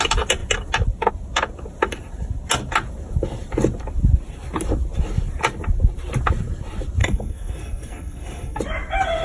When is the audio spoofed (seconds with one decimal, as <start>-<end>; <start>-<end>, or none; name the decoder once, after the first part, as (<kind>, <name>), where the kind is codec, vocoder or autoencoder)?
7.0-8.6 (codec, SNAC)